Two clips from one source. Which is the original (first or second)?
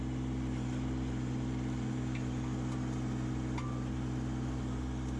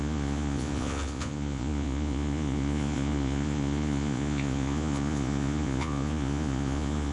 first